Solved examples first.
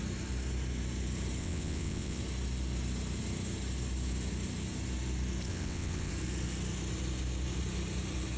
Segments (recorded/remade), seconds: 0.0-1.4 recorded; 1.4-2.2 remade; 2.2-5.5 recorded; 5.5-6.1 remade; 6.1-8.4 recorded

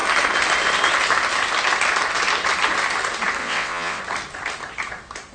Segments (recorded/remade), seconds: 0.0-3.4 recorded; 3.4-4.0 remade; 4.0-5.3 recorded

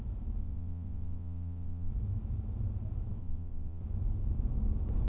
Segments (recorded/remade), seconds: 0.0-0.4 recorded; 0.4-1.9 remade; 1.9-3.2 recorded; 3.2-3.8 remade; 3.8-5.1 recorded

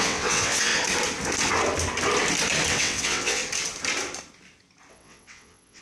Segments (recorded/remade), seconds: 0.0-0.7 remade; 0.7-2.7 recorded; 2.7-3.4 remade; 3.4-4.9 recorded; 4.9-5.8 remade

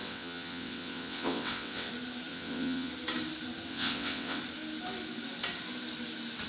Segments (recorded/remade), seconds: 0.0-1.9 remade; 1.9-2.3 recorded; 2.3-2.9 remade; 2.9-3.7 recorded; 3.7-4.4 remade; 4.4-6.5 recorded